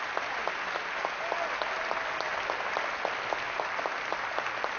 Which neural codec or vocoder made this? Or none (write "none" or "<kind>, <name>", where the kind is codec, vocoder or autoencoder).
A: none